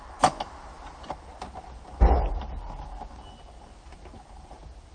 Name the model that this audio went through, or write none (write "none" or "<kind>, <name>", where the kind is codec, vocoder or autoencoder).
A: none